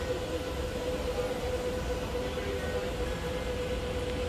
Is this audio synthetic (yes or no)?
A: no